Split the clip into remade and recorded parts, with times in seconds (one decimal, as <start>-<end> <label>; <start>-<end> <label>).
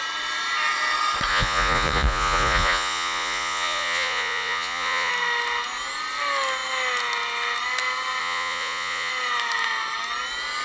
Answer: 0.0-1.3 recorded; 1.3-5.1 remade; 5.1-8.2 recorded; 8.2-9.1 remade; 9.1-10.6 recorded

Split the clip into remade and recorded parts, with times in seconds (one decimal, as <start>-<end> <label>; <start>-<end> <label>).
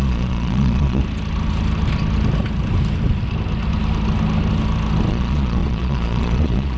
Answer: 0.0-1.0 remade; 1.0-5.1 recorded; 5.1-6.8 remade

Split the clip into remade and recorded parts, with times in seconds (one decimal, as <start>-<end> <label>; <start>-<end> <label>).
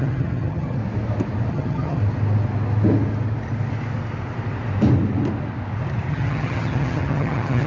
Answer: 0.0-0.8 remade; 0.8-1.5 recorded; 1.5-2.0 remade; 2.0-6.1 recorded; 6.1-7.7 remade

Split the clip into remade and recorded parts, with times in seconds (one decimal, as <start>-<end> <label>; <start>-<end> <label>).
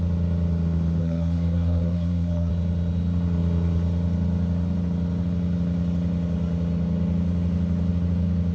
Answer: 0.0-1.0 recorded; 1.0-2.5 remade; 2.5-8.5 recorded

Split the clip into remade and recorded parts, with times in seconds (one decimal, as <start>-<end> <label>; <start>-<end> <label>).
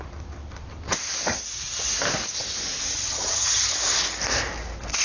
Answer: 0.0-2.9 recorded; 2.9-3.7 remade; 3.7-5.0 recorded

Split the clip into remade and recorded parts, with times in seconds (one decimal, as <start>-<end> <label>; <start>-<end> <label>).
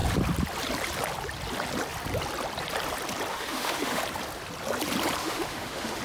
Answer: 0.0-3.3 recorded; 3.3-4.0 remade; 4.0-5.2 recorded; 5.2-6.0 remade